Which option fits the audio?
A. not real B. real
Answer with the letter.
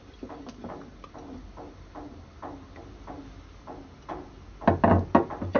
B